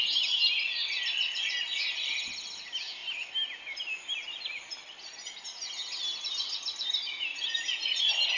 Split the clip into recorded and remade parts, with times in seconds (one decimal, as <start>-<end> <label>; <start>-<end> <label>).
0.0-8.4 recorded